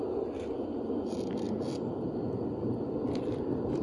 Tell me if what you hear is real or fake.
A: real